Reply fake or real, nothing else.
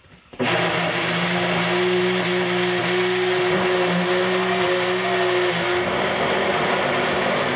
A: real